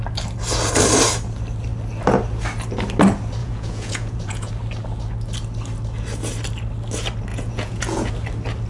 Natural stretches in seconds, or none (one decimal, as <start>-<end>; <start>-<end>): 0.0-3.4; 4.5-7.3; 8.1-8.7